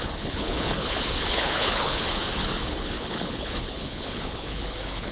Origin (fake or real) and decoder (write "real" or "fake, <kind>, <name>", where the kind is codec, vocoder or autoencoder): fake, codec, HILCodec